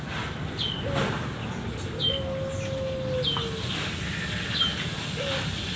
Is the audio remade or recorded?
recorded